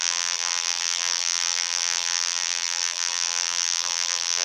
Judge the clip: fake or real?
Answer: fake